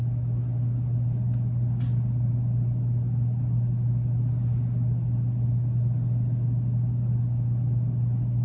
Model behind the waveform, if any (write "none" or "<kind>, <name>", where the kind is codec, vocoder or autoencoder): none